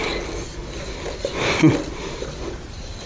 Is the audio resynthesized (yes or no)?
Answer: no